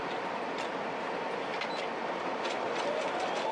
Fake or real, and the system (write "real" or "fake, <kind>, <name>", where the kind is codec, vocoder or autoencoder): real